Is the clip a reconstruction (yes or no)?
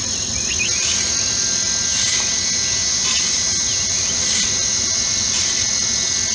no